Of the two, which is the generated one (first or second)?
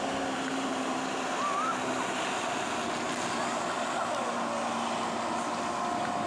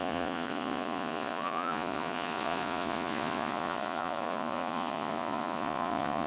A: second